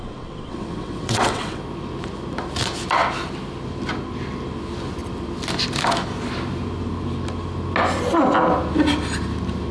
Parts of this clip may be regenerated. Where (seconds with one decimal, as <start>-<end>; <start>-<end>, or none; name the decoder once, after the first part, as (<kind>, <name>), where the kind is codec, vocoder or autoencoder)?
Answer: 0.0-1.6 (vocoder, WaveNeXt)